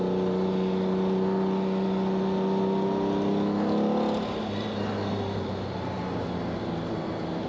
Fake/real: real